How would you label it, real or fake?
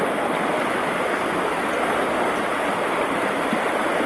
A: real